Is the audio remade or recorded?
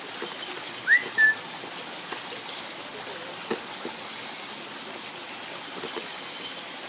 recorded